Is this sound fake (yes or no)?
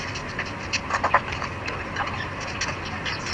no